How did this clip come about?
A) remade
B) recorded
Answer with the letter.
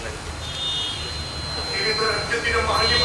B